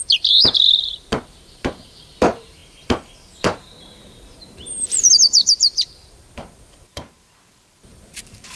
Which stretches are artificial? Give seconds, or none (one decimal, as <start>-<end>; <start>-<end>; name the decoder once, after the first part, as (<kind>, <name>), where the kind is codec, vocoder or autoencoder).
0.0-8.6 (vocoder, BigVGAN v2)